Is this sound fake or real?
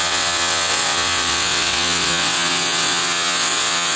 fake